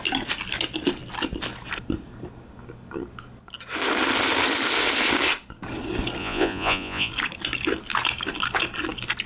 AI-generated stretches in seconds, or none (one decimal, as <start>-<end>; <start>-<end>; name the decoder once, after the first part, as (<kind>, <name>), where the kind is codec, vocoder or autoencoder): 6.2-7.1 (vocoder, Vocos)